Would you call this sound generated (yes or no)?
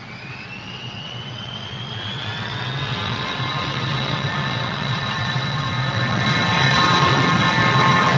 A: yes